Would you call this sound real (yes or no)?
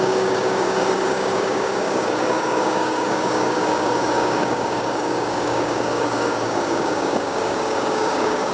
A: no